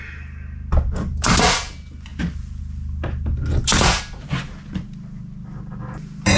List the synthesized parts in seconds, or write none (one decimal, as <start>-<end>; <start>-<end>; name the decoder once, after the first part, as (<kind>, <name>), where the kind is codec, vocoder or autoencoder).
none